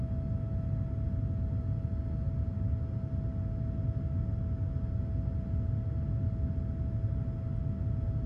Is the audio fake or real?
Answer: real